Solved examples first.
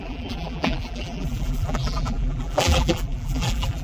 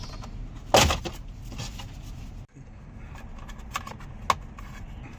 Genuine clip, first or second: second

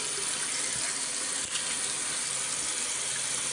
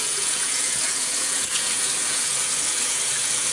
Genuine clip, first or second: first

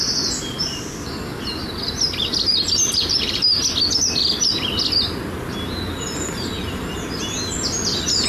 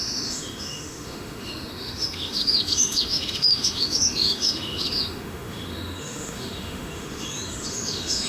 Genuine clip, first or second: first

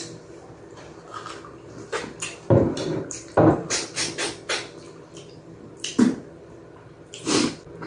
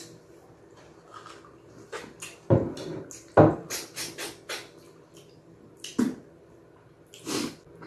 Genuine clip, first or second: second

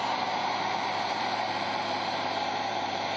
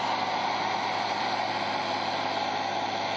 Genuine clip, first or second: second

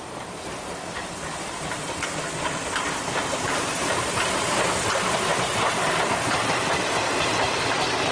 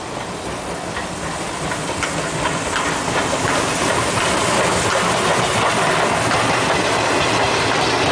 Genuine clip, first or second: second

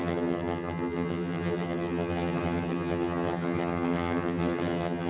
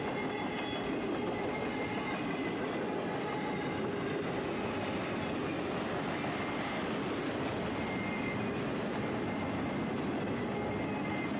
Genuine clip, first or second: second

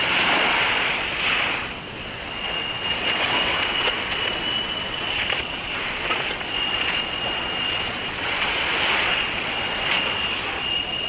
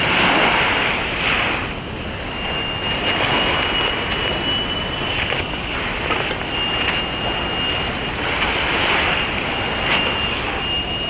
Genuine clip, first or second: second